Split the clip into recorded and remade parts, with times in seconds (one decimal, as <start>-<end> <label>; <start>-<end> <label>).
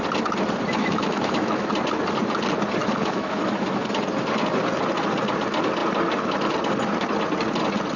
0.0-0.8 recorded; 0.8-1.7 remade; 1.7-2.8 recorded; 2.8-3.8 remade; 3.8-8.0 recorded